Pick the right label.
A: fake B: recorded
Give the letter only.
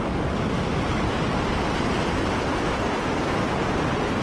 B